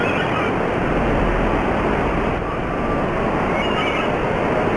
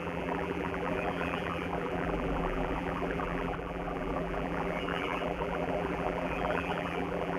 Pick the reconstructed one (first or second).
second